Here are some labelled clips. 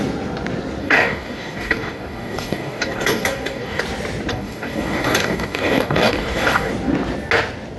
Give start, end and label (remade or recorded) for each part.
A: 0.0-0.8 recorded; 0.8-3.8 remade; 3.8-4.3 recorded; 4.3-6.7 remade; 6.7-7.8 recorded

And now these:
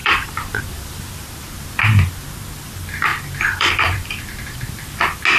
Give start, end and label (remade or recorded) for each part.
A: 0.0-1.1 remade; 1.1-3.1 recorded; 3.1-4.8 remade; 4.8-5.4 recorded

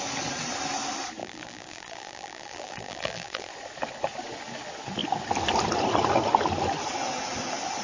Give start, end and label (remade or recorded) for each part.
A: 0.0-1.2 recorded; 1.2-3.5 remade; 3.5-7.8 recorded